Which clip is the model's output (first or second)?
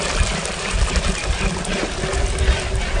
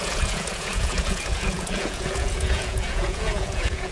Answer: second